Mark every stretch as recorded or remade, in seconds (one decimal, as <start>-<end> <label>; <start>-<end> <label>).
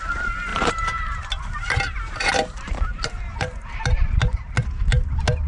0.0-0.5 recorded; 0.5-3.8 remade; 3.8-5.5 recorded